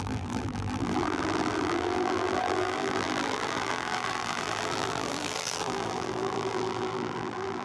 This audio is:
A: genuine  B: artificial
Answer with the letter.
B